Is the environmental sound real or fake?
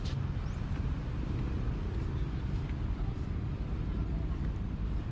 real